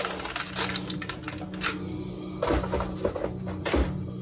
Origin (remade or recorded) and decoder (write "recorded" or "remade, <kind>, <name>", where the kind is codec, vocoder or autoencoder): recorded